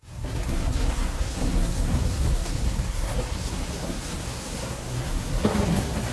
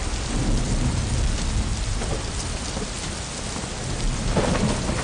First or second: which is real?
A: second